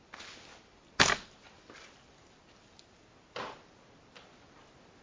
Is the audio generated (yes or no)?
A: no